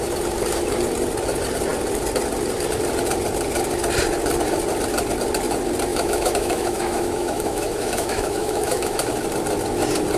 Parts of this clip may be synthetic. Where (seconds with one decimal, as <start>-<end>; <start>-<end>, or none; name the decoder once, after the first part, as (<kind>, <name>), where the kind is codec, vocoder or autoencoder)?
5.9-9.1 (autoencoder, DAC-VAE)